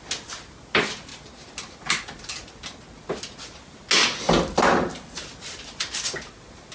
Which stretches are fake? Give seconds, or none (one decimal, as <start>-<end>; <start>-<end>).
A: none